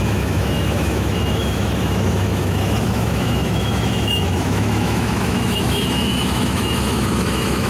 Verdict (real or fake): fake